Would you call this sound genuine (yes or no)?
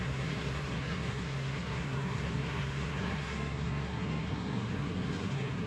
no